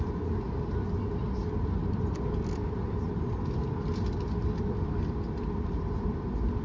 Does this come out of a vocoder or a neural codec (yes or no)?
no